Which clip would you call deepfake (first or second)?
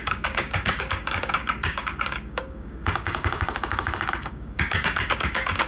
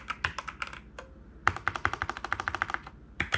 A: first